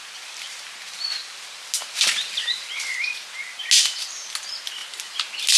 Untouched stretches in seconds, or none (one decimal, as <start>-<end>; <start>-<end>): 0.0-5.6